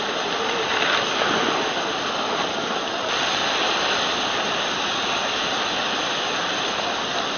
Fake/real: real